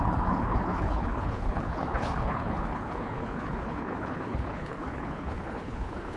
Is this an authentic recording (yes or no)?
no